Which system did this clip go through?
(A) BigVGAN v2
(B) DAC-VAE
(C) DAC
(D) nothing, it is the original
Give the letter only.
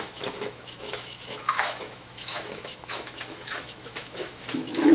B